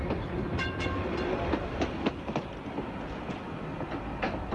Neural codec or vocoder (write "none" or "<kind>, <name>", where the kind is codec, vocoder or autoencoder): none